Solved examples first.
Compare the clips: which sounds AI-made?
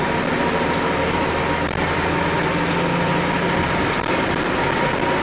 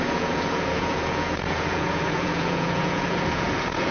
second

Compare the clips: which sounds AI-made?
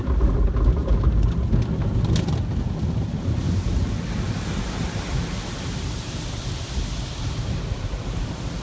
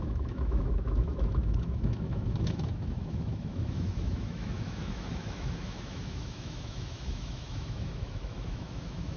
second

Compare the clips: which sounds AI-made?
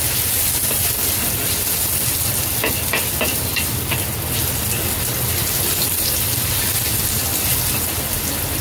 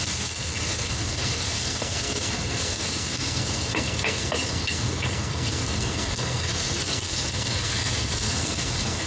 second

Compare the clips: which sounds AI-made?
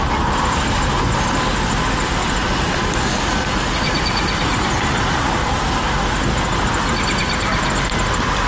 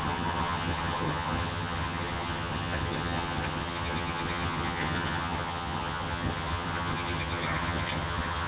second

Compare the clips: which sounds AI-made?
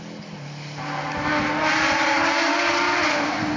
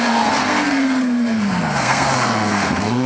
second